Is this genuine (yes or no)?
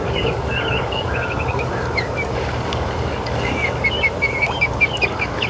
no